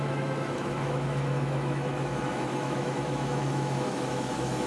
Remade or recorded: remade